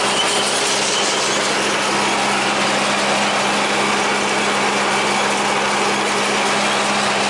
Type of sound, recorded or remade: recorded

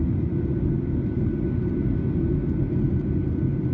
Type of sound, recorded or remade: recorded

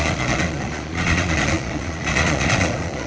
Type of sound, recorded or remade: remade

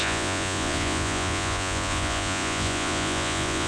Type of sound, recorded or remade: remade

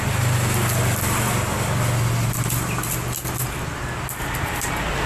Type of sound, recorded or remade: recorded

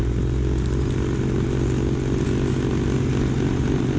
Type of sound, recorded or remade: recorded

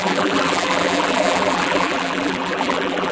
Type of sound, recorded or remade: remade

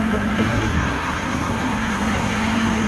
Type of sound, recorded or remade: remade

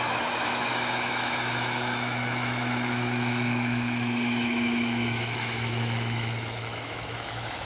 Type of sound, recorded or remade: remade